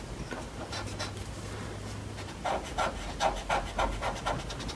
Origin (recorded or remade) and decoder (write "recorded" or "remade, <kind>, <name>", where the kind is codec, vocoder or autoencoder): recorded